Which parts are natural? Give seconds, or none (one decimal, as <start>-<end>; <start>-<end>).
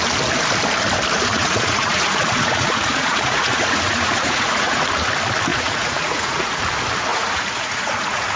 0.0-1.3; 4.8-5.5; 6.6-7.1